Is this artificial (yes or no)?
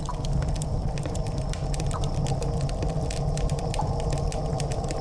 no